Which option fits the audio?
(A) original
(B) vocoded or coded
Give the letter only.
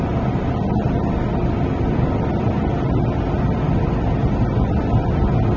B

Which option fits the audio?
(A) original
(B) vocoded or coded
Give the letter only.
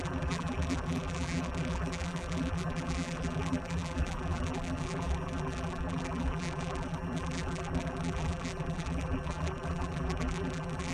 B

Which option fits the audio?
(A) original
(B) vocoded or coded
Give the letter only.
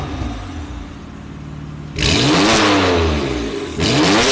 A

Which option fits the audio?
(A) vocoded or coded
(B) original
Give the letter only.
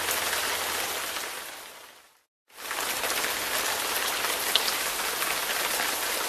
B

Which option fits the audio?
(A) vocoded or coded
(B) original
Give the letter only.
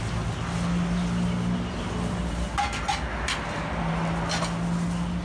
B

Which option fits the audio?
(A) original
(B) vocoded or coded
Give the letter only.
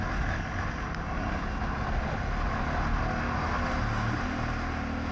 A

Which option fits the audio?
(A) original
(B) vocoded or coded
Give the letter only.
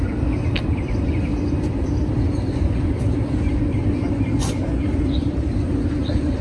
B